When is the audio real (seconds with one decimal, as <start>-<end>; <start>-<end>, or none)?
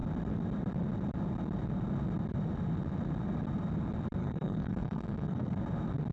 0.0-4.2; 5.6-6.1